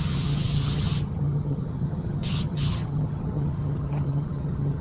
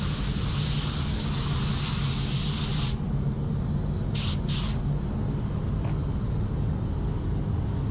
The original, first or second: second